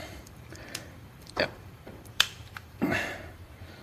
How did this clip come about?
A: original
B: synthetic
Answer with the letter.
B